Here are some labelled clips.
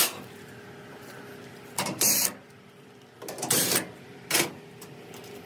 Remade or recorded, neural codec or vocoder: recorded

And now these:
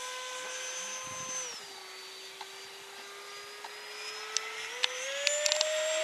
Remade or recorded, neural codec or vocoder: recorded